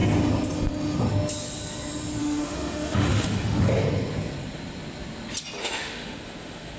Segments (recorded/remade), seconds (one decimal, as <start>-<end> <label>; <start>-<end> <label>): 0.0-2.2 recorded; 2.2-3.7 remade; 3.7-5.6 recorded; 5.6-6.8 remade